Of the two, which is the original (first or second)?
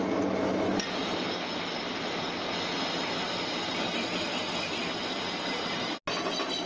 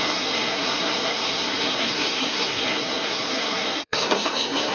first